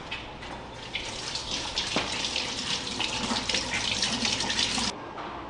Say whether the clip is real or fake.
real